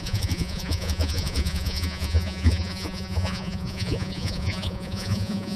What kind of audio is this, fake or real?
fake